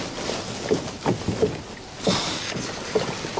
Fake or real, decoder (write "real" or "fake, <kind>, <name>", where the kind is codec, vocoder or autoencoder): real